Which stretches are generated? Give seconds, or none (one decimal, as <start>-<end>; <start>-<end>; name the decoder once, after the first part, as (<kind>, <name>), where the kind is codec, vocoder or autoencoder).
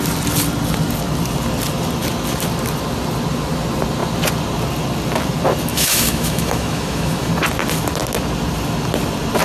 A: 5.7-7.3 (autoencoder, DAC-VAE)